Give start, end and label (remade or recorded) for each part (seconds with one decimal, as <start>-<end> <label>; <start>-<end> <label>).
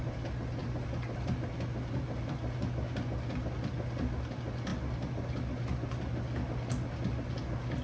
0.0-0.6 recorded; 0.6-1.5 remade; 1.5-7.8 recorded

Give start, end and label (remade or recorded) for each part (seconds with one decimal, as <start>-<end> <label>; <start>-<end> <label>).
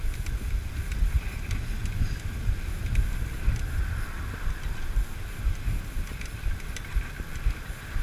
0.0-8.0 recorded